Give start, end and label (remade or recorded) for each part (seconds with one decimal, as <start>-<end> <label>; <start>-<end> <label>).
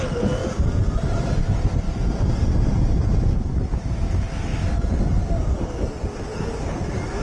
0.0-0.4 recorded; 0.4-2.5 remade; 2.5-7.2 recorded